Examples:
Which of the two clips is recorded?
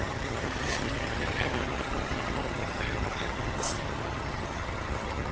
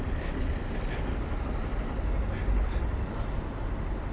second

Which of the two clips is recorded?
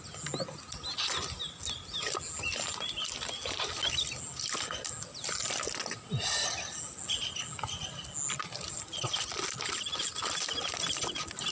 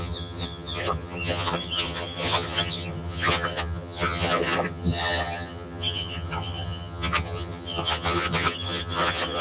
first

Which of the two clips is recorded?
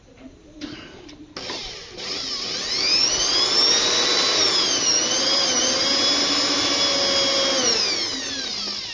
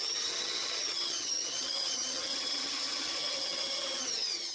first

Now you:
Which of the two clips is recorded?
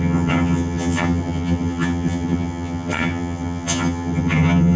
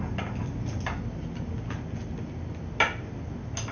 second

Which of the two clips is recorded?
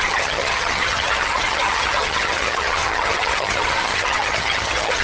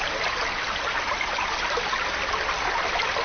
second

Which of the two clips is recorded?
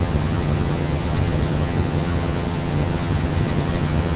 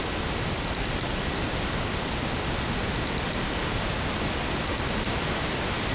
second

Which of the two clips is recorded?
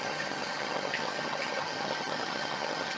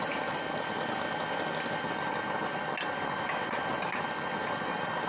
second